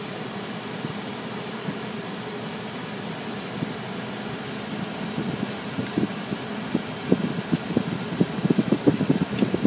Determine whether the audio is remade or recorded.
recorded